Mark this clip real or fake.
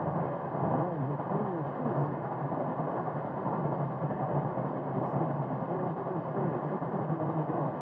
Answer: real